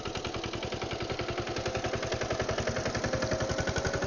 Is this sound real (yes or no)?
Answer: yes